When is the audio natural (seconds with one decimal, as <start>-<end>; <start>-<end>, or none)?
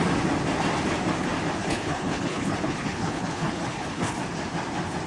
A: 0.0-1.6; 4.2-5.1